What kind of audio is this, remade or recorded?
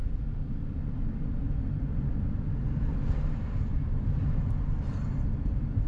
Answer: recorded